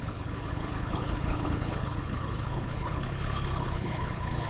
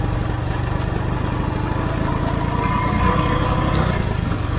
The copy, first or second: first